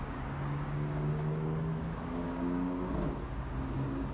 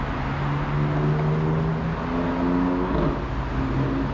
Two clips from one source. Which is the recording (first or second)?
second